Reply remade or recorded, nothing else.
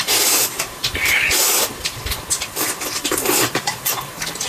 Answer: remade